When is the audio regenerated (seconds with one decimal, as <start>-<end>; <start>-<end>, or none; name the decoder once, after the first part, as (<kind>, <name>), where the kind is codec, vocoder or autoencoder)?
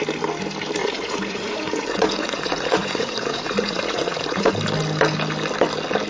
0.8-4.5 (vocoder, Vocos)